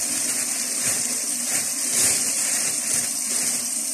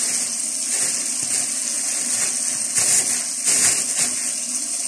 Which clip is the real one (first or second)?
second